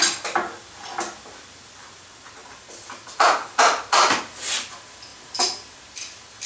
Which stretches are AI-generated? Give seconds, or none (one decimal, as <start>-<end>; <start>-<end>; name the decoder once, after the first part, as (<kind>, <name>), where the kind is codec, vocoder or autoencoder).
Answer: 2.4-4.2 (vocoder, BigVGAN v2); 5.1-5.8